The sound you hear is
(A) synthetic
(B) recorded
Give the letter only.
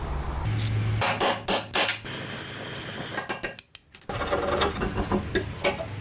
B